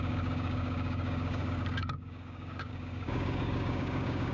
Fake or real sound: fake